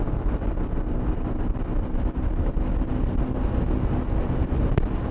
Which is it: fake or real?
real